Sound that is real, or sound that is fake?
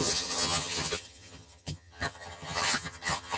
fake